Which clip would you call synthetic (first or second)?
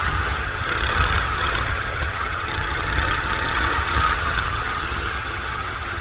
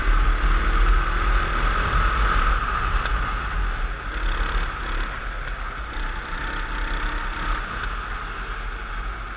first